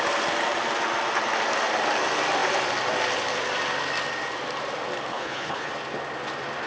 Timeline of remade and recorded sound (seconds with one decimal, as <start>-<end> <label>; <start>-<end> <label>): 0.0-5.1 recorded; 5.1-5.7 remade; 5.7-6.7 recorded